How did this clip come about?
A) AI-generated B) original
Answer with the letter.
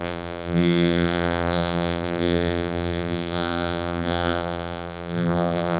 A